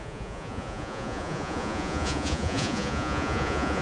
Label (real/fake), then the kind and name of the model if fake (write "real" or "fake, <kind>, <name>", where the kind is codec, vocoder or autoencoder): fake, vocoder, Vocos